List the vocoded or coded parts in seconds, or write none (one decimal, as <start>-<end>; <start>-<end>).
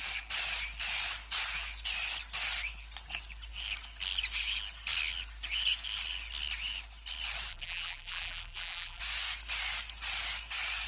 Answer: 7.5-9.0